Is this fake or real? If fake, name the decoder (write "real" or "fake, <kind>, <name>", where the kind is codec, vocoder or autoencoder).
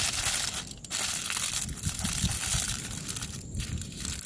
real